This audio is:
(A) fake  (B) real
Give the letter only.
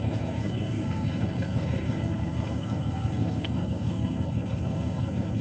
A